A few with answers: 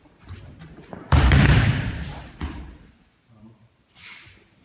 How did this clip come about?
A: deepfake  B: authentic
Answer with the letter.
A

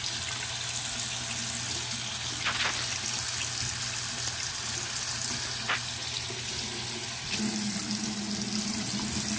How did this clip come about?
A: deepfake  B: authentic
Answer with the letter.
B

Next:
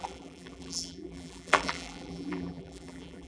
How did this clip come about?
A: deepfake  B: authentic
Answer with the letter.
A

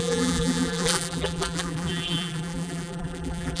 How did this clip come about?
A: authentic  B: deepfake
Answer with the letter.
B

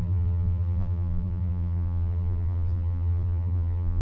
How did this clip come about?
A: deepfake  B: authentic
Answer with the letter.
A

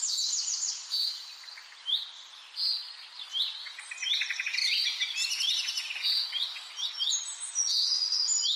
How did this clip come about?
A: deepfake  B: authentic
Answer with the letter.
B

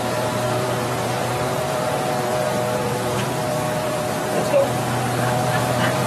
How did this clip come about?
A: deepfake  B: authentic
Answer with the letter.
A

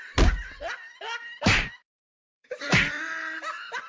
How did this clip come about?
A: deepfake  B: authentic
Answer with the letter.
A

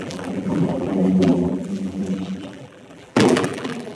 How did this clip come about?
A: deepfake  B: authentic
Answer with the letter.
A